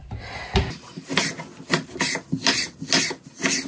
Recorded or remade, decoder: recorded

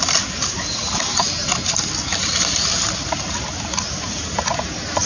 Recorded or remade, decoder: recorded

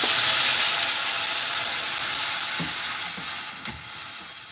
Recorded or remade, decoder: recorded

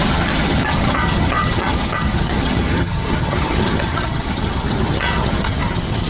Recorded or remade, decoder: remade, vocoder, HiFi-GAN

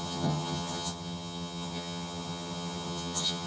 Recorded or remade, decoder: remade, vocoder, HiFi-GAN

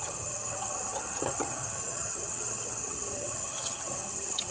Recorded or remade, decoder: remade, vocoder, HiFi-GAN